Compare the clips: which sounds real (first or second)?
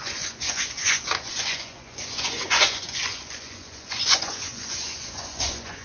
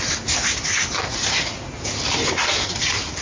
second